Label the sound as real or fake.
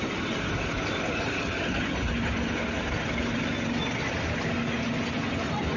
real